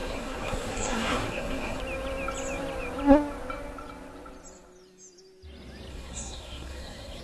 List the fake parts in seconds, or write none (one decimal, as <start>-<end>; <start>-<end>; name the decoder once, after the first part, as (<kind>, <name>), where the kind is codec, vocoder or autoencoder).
0.0-1.8 (codec, SNAC); 5.9-7.2

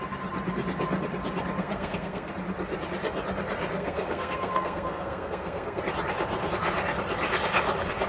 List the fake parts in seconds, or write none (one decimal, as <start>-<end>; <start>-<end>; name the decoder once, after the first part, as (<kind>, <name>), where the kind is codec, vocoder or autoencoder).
1.6-2.3 (codec, SNAC); 3.8-5.8

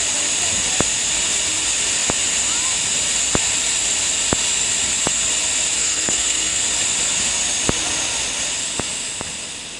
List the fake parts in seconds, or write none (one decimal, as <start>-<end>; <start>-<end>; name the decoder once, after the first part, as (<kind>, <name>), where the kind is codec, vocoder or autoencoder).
5.8-6.6 (codec, SNAC)

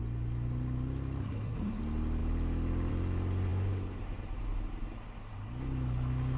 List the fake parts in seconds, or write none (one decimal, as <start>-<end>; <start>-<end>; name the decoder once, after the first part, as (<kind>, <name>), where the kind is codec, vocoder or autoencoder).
1.2-1.8 (codec, SNAC)

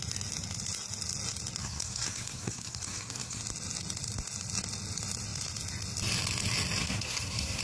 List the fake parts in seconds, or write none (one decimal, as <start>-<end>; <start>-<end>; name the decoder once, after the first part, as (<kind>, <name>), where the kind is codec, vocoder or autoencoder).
1.6-3.4 (codec, SNAC); 6.8-7.6

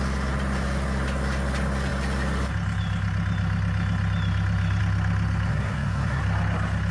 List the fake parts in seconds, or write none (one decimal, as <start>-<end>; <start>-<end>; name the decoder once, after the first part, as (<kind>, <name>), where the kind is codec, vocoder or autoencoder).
5.5-6.2 (codec, SNAC)

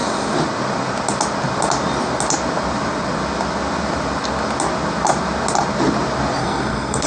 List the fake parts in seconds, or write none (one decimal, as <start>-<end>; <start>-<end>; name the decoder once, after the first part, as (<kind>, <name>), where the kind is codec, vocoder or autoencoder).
6.4-7.1 (codec, SNAC)